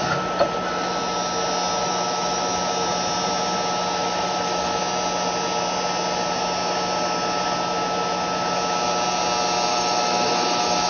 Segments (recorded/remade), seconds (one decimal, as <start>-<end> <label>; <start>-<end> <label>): 0.0-1.8 recorded; 1.8-2.7 remade; 2.7-4.0 recorded; 4.0-4.8 remade; 4.8-9.7 recorded; 9.7-10.9 remade